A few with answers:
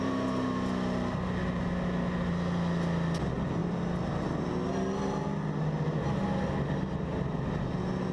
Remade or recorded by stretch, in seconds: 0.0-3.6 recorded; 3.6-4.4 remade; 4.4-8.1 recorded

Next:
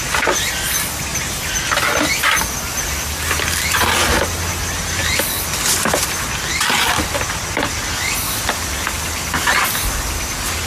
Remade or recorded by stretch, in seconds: 0.0-10.7 recorded

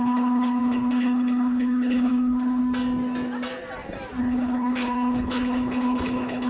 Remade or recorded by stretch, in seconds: 0.0-2.6 remade; 2.6-4.2 recorded; 4.2-6.5 remade

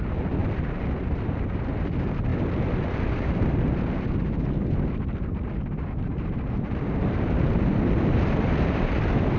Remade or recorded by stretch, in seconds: 0.0-9.4 recorded

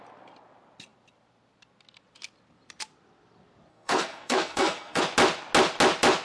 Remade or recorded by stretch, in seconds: 0.0-3.7 recorded; 3.7-5.0 remade; 5.0-6.2 recorded